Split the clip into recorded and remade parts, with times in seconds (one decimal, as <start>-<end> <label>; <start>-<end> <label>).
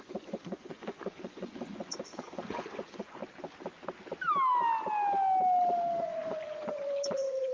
0.0-3.2 remade; 3.2-6.0 recorded; 6.0-7.5 remade